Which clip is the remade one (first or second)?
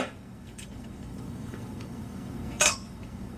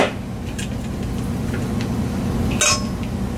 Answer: first